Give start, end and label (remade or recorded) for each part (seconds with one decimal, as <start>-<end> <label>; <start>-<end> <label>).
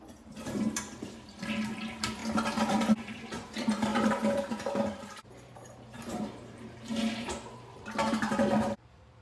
0.0-2.2 remade; 2.2-3.0 recorded; 3.0-9.2 remade